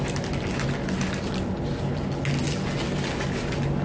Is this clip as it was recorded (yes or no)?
yes